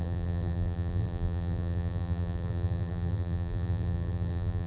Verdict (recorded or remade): remade